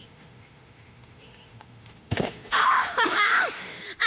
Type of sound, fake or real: fake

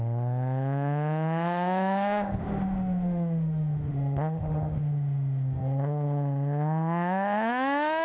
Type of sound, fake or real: fake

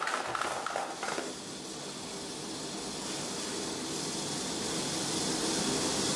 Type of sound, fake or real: real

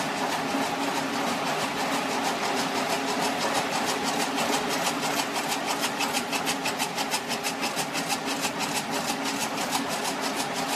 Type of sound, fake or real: real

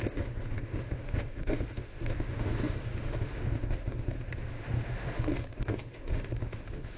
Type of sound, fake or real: fake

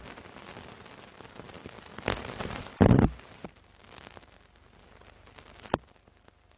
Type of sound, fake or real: real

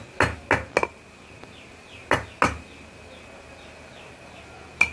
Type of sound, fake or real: real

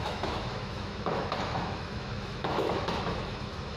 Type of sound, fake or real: fake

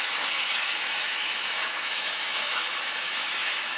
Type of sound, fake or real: fake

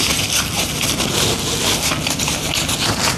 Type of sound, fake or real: real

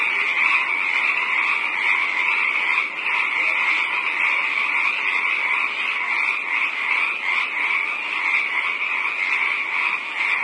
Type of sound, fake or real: real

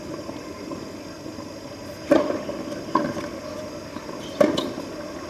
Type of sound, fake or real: real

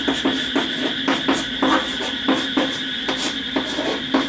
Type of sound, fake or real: real